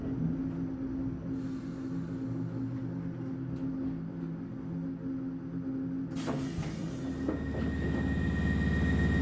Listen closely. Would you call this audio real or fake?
real